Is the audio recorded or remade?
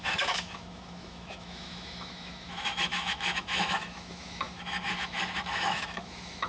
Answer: remade